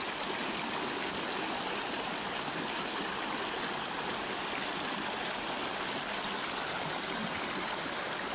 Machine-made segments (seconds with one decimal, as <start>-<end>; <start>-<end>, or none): none